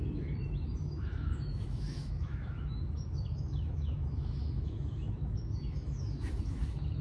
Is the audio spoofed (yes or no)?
yes